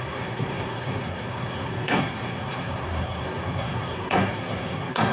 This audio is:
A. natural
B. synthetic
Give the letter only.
B